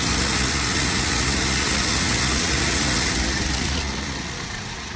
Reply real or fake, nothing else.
fake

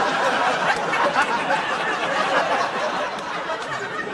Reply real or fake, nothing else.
real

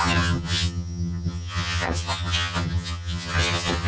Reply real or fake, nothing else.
fake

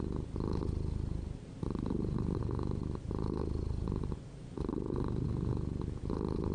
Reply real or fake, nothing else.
real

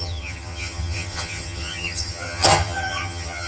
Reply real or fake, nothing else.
fake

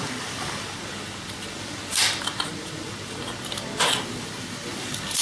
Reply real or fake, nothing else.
real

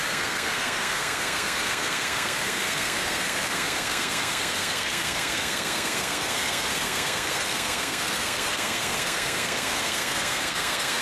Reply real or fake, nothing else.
fake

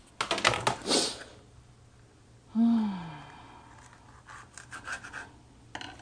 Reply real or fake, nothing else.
real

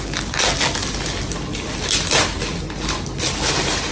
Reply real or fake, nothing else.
real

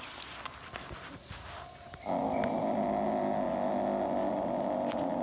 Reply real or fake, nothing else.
real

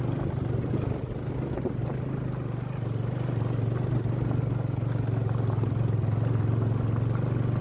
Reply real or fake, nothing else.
real